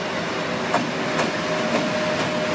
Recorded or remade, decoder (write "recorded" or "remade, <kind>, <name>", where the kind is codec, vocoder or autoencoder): recorded